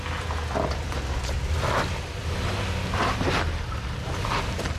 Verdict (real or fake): real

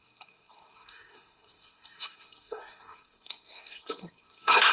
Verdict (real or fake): fake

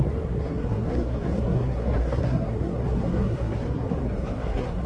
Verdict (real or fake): fake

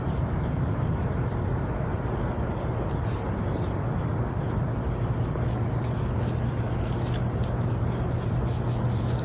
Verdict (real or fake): real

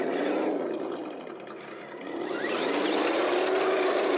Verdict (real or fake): real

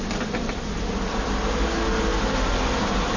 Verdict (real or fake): real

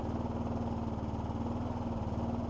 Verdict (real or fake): real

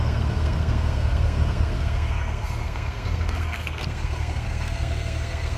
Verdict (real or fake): fake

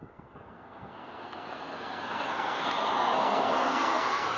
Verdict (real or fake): fake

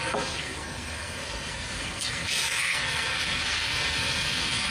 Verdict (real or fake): fake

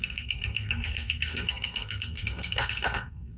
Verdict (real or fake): fake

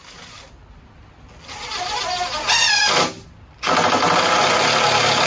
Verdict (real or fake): real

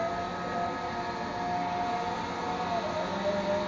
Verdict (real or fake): real